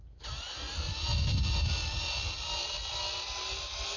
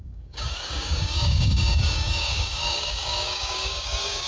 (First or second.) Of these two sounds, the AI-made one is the second